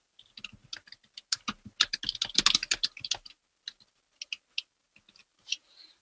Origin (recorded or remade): recorded